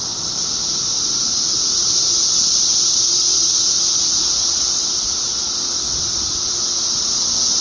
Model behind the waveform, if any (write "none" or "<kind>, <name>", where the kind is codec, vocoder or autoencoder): none